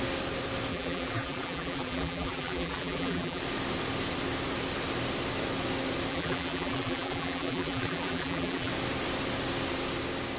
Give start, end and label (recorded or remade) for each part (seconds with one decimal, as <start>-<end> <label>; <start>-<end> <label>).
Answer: 0.0-0.7 recorded; 0.7-3.4 remade; 3.4-6.1 recorded; 6.1-8.7 remade; 8.7-10.4 recorded